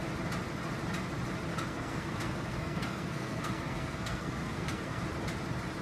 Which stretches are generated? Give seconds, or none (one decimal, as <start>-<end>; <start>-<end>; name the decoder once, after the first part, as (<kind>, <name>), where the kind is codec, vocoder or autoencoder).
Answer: 1.5-5.0 (codec, SNAC)